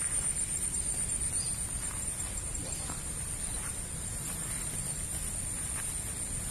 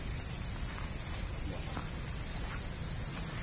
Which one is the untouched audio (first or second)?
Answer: second